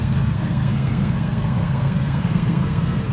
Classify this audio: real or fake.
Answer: fake